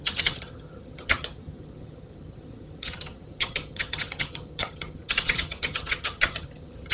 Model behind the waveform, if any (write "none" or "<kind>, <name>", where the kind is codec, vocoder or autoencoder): vocoder, HiFi-GAN